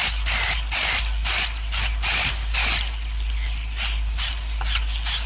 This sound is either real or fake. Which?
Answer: real